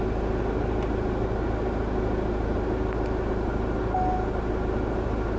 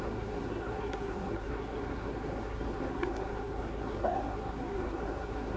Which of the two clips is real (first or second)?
first